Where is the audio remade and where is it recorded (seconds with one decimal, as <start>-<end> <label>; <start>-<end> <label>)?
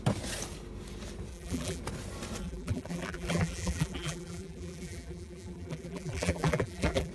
0.0-1.3 recorded; 1.3-1.8 remade; 1.8-2.4 recorded; 2.4-7.1 remade